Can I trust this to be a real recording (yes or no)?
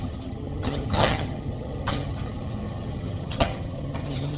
no